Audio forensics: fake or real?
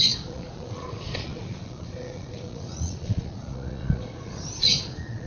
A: fake